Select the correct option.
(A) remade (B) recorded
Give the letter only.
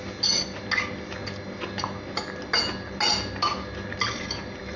B